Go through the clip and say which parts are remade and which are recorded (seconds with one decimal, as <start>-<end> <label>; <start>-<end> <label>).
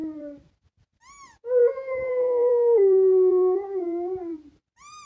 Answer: 0.0-0.7 remade; 0.7-1.6 recorded; 1.6-5.1 remade